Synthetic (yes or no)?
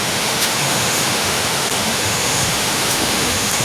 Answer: yes